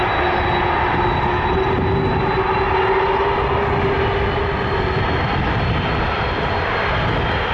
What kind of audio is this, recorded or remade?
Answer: recorded